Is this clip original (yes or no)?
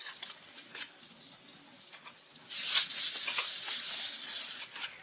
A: yes